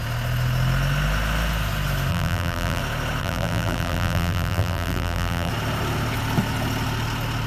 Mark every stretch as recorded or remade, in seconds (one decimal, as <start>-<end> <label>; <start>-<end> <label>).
0.0-2.1 recorded; 2.1-2.8 remade; 2.8-3.2 recorded; 3.2-5.5 remade; 5.5-7.5 recorded